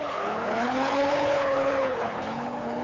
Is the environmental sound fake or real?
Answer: fake